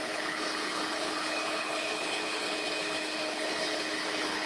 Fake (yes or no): yes